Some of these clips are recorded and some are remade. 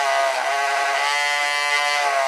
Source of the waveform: recorded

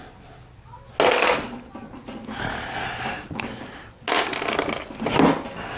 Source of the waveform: recorded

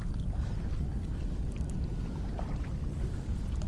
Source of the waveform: recorded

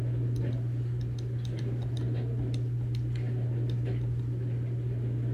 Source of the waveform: recorded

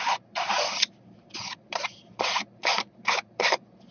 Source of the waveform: remade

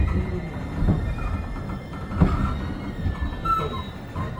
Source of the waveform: recorded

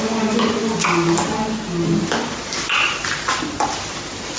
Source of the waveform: recorded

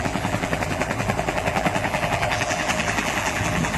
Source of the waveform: remade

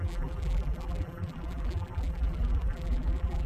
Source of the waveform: remade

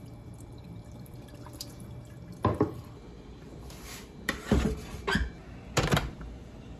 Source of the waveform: remade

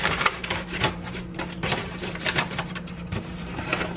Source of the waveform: remade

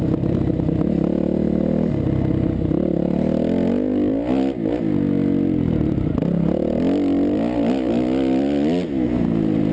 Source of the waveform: recorded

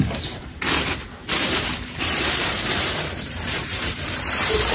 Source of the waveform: remade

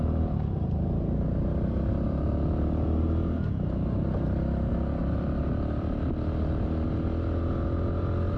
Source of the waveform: recorded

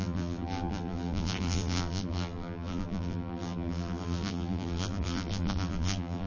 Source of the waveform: remade